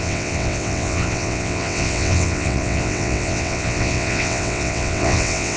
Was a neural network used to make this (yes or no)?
yes